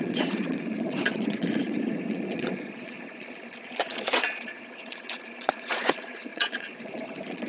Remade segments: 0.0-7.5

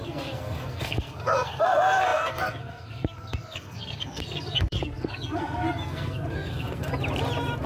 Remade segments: 0.0-6.9

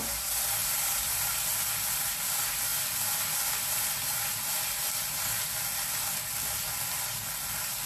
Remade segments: 0.0-7.9

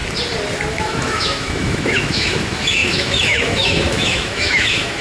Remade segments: 0.7-5.0

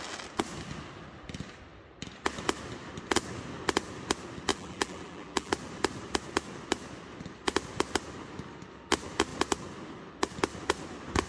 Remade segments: 4.5-5.5

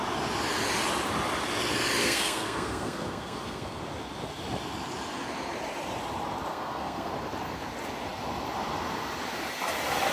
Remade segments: 2.0-3.8; 6.5-7.1

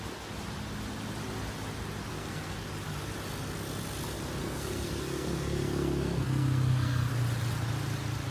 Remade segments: 2.1-2.7; 4.4-7.1

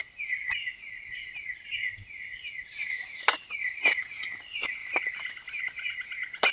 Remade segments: 2.7-3.3; 4.8-5.6